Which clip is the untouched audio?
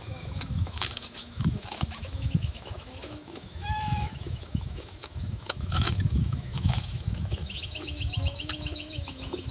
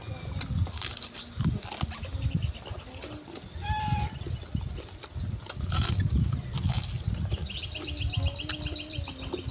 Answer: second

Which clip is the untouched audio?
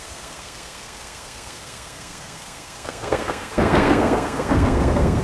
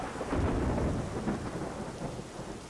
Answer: second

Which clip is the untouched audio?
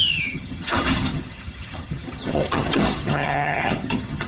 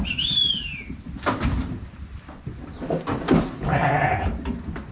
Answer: second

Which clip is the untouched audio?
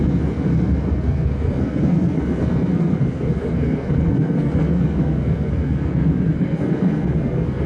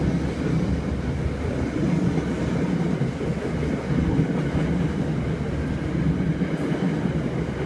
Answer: second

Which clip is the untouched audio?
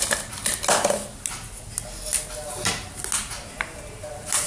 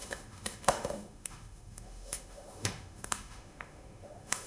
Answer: first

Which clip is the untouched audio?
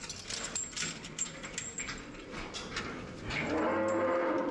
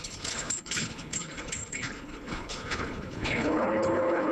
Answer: first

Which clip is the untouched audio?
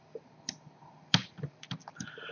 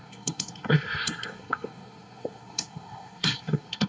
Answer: first